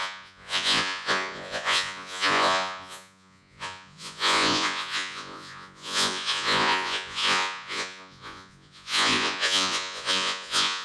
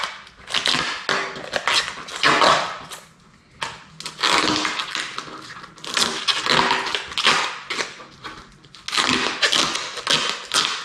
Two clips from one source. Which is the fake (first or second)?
first